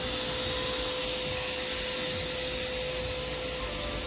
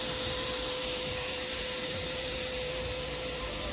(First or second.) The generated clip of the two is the second